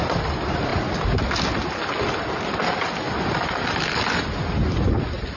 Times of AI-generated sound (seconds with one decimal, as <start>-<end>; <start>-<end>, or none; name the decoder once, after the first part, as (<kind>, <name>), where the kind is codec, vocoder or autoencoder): none